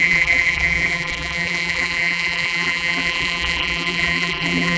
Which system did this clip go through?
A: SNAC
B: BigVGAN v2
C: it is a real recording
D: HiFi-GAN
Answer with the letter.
B